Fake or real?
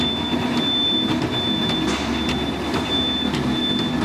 real